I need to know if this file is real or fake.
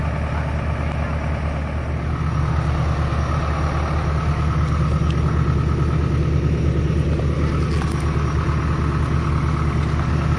real